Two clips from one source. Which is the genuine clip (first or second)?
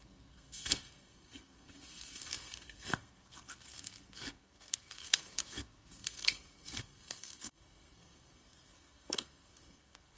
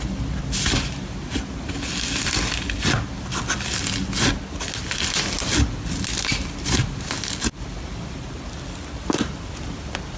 second